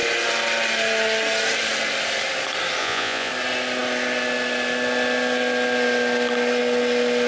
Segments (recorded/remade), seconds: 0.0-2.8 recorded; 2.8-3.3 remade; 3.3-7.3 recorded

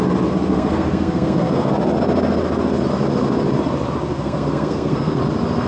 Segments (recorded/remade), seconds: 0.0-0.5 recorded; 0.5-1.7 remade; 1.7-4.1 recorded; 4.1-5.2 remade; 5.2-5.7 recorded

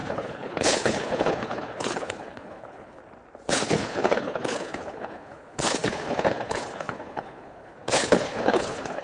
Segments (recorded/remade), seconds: 0.0-3.0 remade; 3.0-3.5 recorded; 3.5-9.0 remade